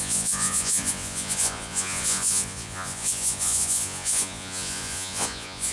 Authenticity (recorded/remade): remade